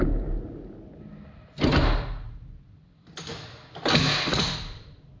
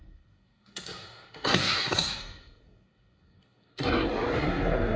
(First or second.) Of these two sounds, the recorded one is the first